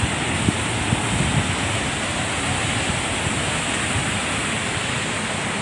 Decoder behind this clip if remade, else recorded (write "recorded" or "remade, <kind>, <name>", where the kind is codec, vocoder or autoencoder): recorded